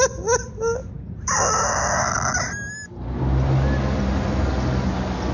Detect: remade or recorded recorded